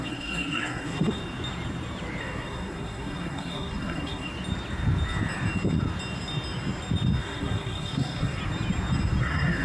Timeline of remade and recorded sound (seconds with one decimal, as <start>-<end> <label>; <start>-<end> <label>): 0.0-1.2 remade; 1.2-2.2 recorded; 2.2-4.3 remade; 4.3-7.2 recorded; 7.2-8.4 remade; 8.4-9.2 recorded; 9.2-9.6 remade